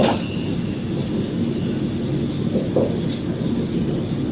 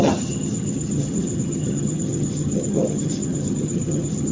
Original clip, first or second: first